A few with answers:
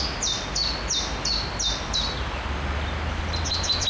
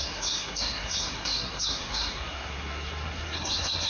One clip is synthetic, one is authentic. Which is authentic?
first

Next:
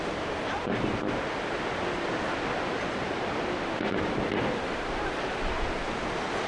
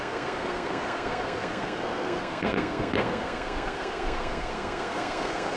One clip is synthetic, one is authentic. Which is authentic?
first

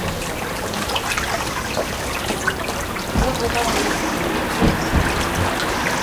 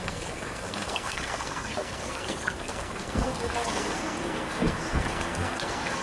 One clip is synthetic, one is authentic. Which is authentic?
first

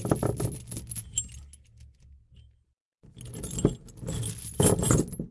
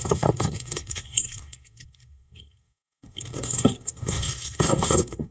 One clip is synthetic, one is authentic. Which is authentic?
first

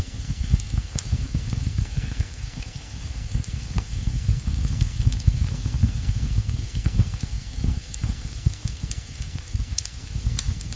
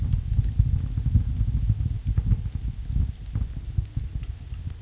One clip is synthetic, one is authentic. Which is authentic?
second